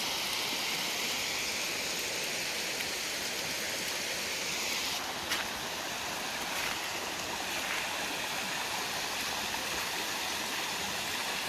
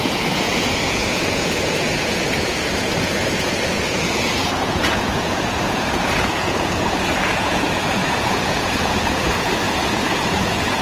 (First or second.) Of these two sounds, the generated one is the second